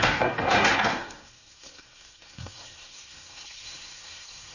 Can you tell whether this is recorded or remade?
remade